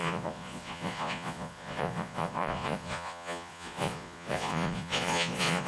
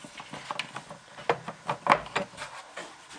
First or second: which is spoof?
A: first